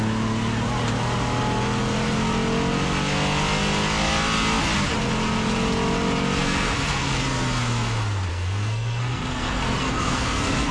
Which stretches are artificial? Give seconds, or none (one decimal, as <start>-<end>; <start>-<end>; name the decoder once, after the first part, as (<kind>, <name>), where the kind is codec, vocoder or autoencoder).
6.4-7.2 (codec, SNAC); 8.3-10.7